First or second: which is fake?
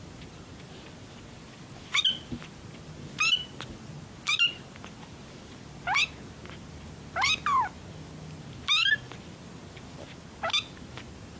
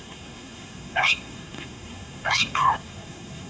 second